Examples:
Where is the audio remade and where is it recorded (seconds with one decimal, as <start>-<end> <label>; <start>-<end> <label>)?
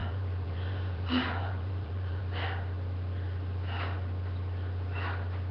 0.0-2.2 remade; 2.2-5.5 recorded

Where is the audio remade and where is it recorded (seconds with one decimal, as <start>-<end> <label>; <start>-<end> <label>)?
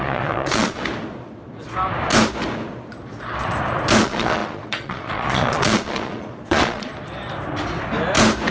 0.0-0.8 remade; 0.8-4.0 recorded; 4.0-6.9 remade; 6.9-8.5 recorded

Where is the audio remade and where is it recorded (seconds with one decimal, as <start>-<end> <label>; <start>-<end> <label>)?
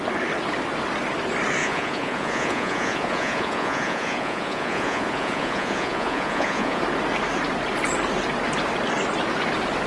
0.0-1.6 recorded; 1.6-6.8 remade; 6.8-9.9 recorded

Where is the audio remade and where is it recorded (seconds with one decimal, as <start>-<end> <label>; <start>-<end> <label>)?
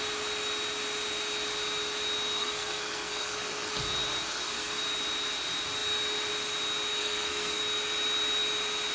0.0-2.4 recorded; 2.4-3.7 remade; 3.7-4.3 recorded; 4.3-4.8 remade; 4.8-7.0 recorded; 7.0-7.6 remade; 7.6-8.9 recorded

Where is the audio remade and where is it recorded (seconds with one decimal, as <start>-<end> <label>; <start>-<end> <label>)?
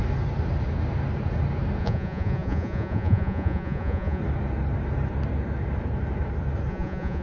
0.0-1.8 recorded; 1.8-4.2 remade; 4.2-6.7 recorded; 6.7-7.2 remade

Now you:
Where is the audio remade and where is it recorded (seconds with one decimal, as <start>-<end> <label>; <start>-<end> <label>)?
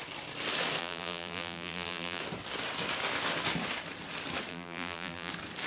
0.0-0.8 recorded; 0.8-2.2 remade; 2.2-4.5 recorded; 4.5-5.3 remade; 5.3-5.7 recorded